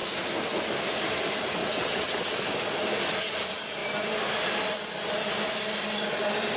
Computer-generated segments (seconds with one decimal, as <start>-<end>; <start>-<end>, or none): 1.6-2.4